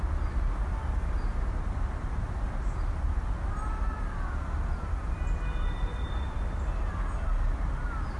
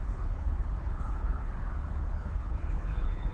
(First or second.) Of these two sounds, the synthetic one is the second